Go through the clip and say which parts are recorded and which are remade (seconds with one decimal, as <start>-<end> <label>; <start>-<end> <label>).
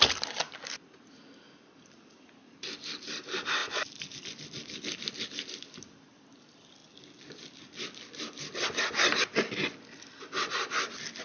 0.0-3.6 remade; 3.6-6.3 recorded; 6.3-6.8 remade; 6.8-11.2 recorded